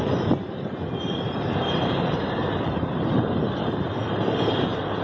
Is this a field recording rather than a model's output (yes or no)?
no